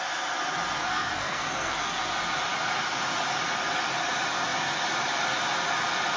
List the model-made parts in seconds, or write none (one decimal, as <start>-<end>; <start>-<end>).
0.8-2.0